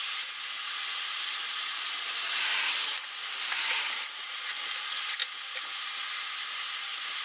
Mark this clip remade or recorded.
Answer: recorded